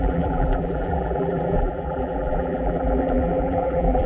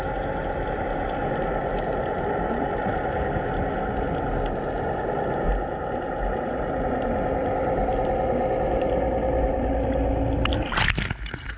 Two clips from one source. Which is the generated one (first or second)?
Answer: first